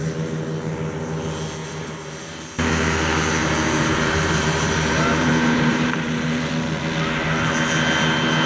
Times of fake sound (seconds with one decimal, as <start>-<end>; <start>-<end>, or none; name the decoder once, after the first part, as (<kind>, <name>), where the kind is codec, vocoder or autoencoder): 1.6-2.7 (vocoder, BigVGAN v2); 3.4-6.5